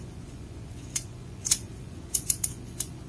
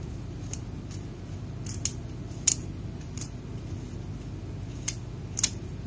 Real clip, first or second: second